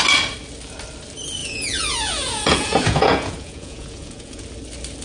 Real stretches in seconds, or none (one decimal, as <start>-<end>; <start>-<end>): 0.0-1.4; 4.4-5.0